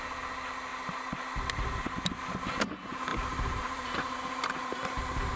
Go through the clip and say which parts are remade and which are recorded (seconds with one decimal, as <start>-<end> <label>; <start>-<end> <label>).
0.0-0.7 recorded; 0.7-2.2 remade; 2.2-3.1 recorded; 3.1-5.0 remade; 5.0-5.4 recorded